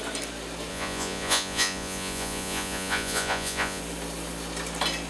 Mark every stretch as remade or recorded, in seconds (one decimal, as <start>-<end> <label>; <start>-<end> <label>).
0.0-0.7 recorded; 0.7-3.8 remade; 3.8-5.1 recorded